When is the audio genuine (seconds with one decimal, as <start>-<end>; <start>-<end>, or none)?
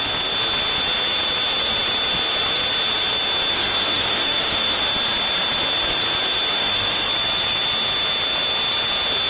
0.0-3.5; 4.9-6.5; 7.1-9.3